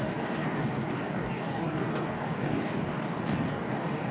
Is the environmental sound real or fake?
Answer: fake